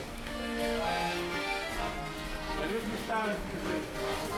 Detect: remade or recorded remade